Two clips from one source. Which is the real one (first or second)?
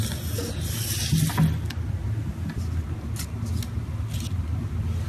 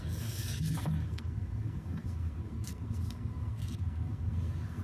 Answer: first